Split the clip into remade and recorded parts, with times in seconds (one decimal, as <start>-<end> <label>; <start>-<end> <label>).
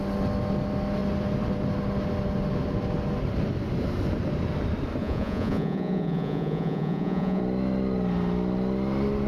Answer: 0.0-5.0 recorded; 5.0-7.4 remade; 7.4-9.3 recorded